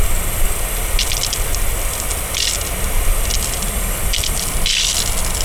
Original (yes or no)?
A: yes